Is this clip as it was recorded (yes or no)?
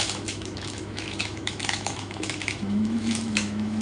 no